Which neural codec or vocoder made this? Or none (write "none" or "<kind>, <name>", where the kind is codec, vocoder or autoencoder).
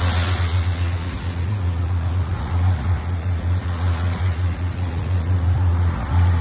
vocoder, Vocos